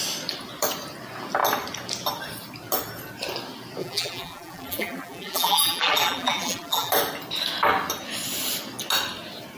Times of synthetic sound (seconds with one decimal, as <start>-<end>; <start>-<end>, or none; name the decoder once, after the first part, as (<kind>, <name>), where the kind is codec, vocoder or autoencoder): 3.8-6.9 (vocoder, BigVGAN v2)